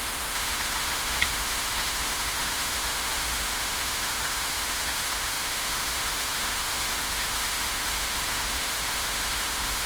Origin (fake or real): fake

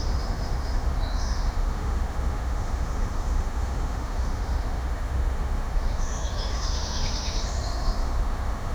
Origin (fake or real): fake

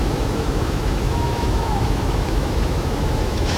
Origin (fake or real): fake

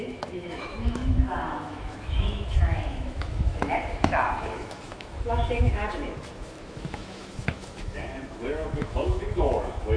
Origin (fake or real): fake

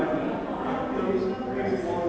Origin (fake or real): real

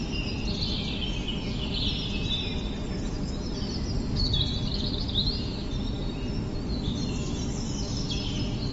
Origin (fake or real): real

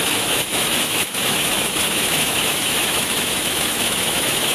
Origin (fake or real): fake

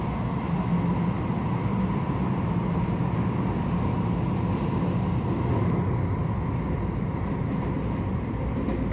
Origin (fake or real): real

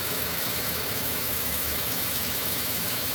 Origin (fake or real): fake